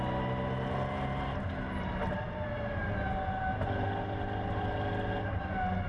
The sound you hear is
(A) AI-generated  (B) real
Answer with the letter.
B